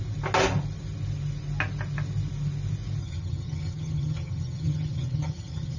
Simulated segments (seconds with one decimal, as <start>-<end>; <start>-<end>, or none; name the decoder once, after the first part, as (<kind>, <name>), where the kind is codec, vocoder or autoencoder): 3.0-5.8 (vocoder, HiFi-GAN)